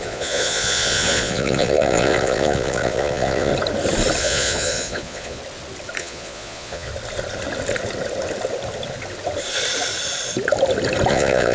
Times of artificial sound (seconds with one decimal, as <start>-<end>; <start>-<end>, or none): 0.0-3.5; 4.2-5.4; 6.0-6.9; 11.1-11.5